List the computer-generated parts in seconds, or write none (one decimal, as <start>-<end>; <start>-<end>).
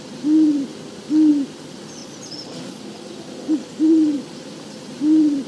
2.0-2.8